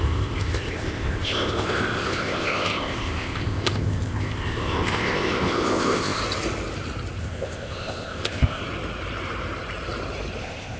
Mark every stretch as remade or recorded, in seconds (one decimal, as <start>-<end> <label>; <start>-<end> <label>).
0.0-6.2 remade; 6.2-7.2 recorded; 7.2-8.6 remade; 8.6-10.4 recorded; 10.4-10.8 remade